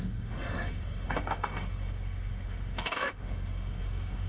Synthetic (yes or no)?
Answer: yes